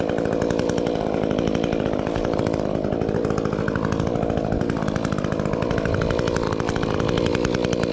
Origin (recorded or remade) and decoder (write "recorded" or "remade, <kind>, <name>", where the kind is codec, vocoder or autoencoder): recorded